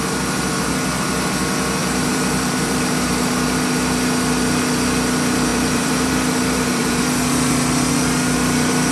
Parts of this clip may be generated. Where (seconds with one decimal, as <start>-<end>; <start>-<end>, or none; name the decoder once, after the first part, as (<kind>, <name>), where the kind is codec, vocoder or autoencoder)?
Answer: 1.8-3.3 (vocoder, BigVGAN v2); 5.5-7.0